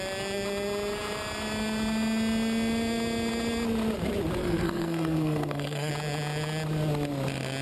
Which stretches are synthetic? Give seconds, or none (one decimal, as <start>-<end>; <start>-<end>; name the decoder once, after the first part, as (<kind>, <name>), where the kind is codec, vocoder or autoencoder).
4.4-5.9 (codec, SNAC)

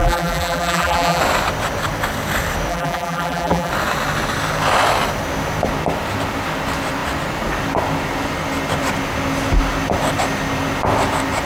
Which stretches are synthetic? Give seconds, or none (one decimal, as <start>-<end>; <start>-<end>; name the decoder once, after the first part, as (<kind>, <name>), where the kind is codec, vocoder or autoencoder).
0.0-1.2 (vocoder, BigVGAN v2); 2.7-3.7